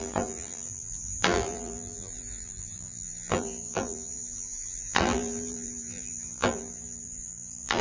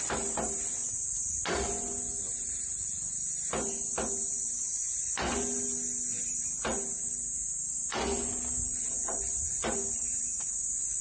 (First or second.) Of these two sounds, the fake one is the first